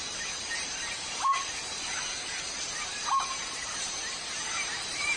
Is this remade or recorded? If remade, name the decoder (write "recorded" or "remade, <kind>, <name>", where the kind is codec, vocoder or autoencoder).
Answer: remade, vocoder, BigVGAN v2